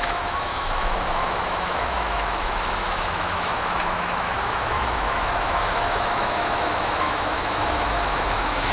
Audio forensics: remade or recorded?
remade